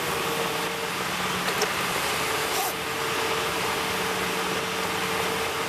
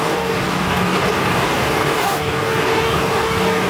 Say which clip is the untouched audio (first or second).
first